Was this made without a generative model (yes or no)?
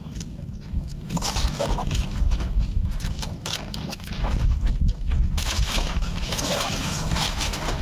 no